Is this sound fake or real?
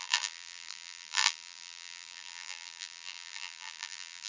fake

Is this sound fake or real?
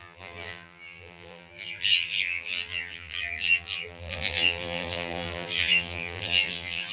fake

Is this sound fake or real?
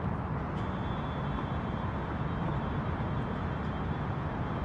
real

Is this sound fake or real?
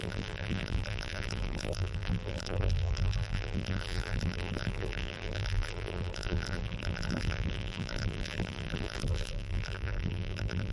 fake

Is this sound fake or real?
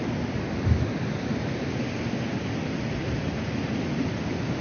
real